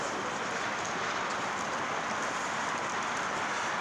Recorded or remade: remade